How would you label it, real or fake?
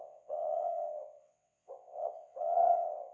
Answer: fake